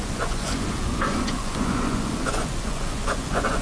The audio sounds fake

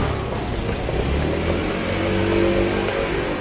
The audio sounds real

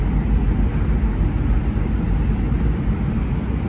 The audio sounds real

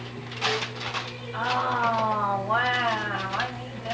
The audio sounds real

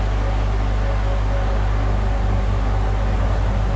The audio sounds real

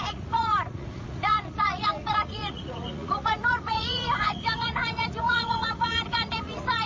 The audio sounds fake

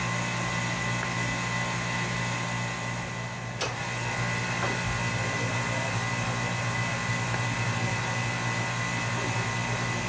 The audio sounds real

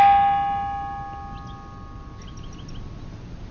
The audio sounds real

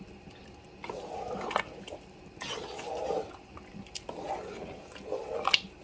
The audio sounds real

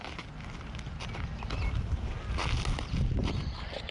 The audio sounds real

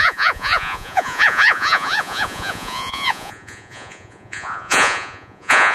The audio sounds fake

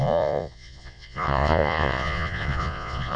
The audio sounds fake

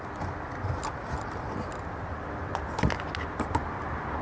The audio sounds real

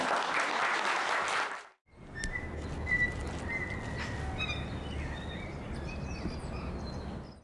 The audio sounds real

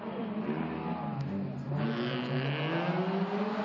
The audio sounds real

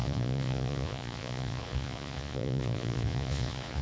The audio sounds fake